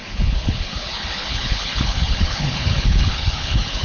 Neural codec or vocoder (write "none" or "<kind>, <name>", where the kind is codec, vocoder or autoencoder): codec, HILCodec